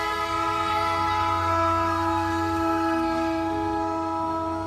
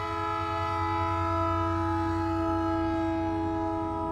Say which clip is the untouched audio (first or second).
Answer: second